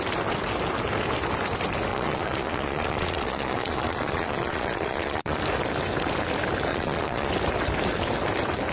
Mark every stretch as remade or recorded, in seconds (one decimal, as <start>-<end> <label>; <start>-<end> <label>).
0.0-1.9 recorded; 1.9-5.4 remade; 5.4-6.7 recorded; 6.7-7.3 remade; 7.3-8.7 recorded